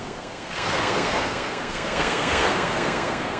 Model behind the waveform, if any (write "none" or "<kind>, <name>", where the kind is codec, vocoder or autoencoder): codec, SNAC